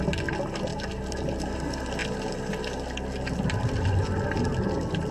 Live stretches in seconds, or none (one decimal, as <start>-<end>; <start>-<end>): 0.0-5.1